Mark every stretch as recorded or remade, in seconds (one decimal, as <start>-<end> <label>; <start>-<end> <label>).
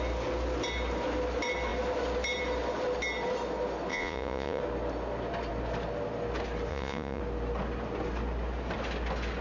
0.0-3.9 recorded; 3.9-4.6 remade; 4.6-6.7 recorded; 6.7-7.2 remade; 7.2-9.4 recorded